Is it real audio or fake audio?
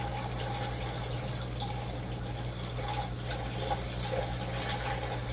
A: real